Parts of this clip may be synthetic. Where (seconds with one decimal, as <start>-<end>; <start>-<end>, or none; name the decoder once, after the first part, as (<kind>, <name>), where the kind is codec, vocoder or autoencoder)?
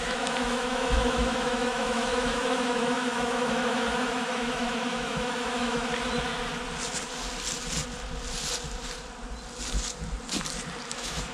0.0-5.9 (autoencoder, DAC-VAE); 10.9-11.3